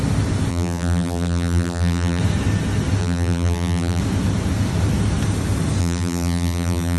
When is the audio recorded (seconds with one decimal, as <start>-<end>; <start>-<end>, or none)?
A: 0.0-0.5; 2.2-3.0; 4.0-5.8